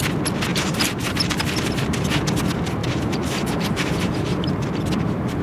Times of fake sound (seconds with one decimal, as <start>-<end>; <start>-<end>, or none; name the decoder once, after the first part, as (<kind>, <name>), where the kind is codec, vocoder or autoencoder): 0.5-2.4 (vocoder, BigVGAN v2); 2.8-4.5

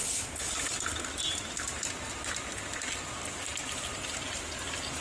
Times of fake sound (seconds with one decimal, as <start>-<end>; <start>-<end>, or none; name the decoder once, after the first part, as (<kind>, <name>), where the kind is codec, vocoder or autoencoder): 0.0-1.9 (vocoder, BigVGAN v2)

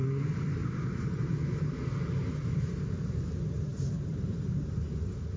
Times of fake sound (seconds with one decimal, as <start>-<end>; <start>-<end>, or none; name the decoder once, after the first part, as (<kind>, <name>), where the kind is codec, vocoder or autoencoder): 0.6-1.4 (vocoder, BigVGAN v2); 2.2-3.2; 3.7-4.9

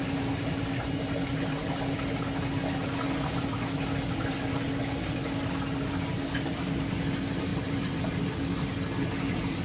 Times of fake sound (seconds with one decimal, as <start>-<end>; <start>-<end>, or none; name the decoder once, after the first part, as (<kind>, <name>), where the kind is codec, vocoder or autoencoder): 7.5-8.1 (vocoder, BigVGAN v2)

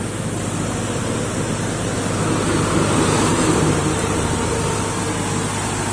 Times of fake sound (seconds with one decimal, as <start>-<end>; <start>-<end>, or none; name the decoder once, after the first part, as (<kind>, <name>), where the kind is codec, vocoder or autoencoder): 3.3-4.8 (vocoder, BigVGAN v2)